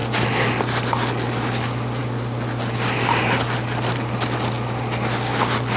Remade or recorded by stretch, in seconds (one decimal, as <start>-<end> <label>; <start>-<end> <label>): 0.0-5.8 recorded